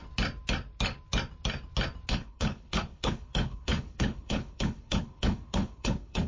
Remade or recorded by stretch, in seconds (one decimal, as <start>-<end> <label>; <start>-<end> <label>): 0.0-2.1 recorded; 2.1-6.3 remade